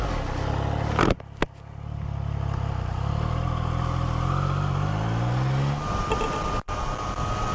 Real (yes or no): yes